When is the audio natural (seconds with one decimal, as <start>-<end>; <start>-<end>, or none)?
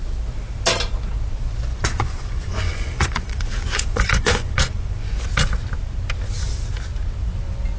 0.0-1.7; 5.2-7.8